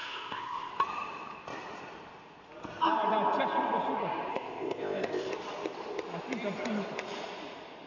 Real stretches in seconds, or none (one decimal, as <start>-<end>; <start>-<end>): 0.7-4.3; 5.3-7.9